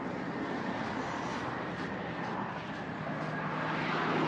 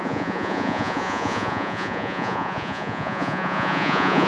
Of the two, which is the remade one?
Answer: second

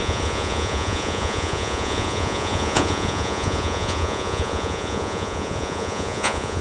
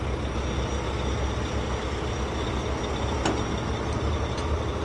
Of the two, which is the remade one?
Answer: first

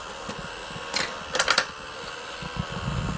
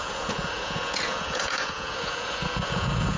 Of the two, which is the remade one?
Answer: second